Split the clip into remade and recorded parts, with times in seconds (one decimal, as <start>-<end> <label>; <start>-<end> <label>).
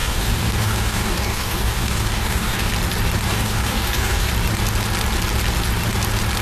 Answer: 0.0-2.7 remade; 2.7-3.3 recorded; 3.3-4.3 remade; 4.3-6.4 recorded